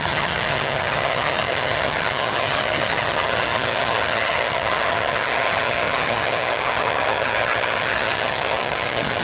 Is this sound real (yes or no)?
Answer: no